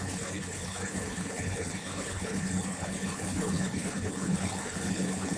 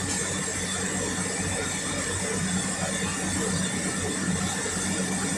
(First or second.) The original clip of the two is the second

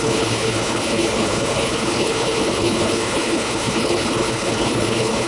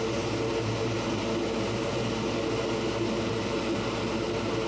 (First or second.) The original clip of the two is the second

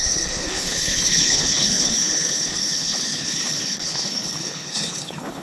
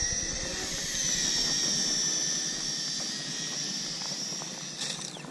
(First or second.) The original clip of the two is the second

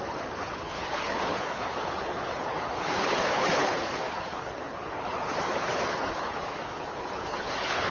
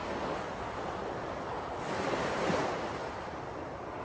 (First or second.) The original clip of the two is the second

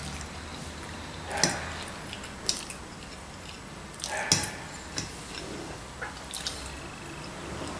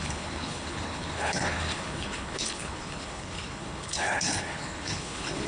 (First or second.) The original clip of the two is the first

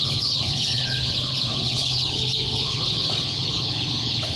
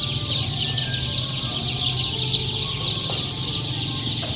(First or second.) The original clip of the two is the second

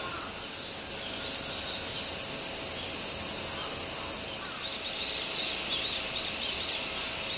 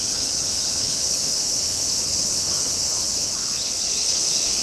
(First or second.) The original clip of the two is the first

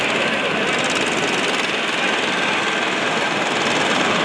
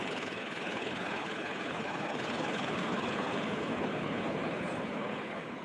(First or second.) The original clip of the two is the first